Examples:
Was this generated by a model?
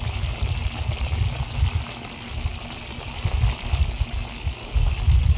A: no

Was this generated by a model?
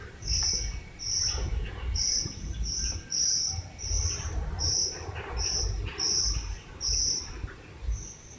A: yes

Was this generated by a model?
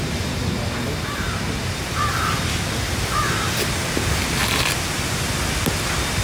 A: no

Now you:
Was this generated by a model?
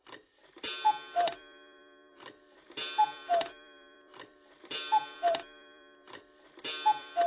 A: yes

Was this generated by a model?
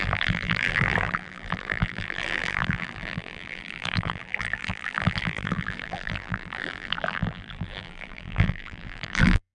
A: yes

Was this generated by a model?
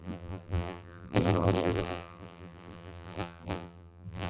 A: yes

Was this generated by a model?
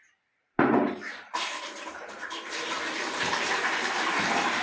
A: yes